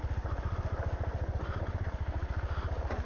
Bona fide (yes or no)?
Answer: yes